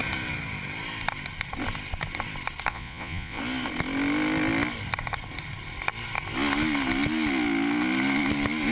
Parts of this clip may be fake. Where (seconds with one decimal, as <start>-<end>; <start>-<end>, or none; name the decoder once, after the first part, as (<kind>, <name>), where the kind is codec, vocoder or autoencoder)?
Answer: 2.7-3.4 (vocoder, Vocos)